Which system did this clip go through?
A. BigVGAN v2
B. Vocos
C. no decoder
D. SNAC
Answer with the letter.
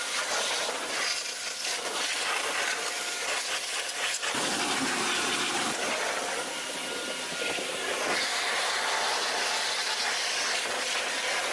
C